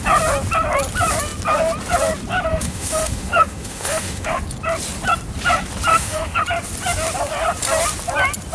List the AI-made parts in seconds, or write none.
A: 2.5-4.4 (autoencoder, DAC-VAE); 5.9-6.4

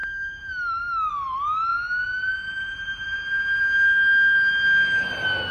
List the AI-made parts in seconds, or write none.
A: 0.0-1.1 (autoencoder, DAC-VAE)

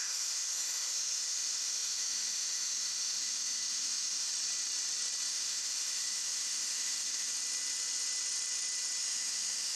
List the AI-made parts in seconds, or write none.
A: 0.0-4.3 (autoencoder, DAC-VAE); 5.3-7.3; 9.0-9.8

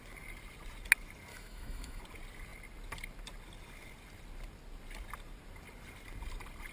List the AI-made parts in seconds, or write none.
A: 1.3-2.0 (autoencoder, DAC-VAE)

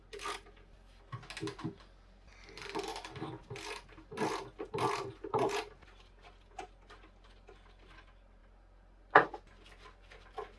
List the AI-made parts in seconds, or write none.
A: none

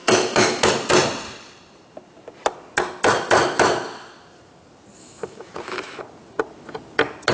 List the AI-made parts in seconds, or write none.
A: 0.0-0.7 (autoencoder, DAC-VAE); 5.0-6.0

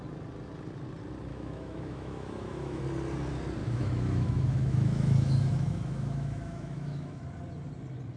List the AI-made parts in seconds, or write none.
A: 1.3-2.8 (autoencoder, DAC-VAE); 3.6-7.2

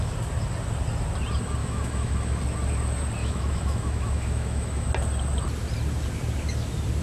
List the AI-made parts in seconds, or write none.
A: 1.6-2.4 (autoencoder, DAC-VAE); 3.2-4.9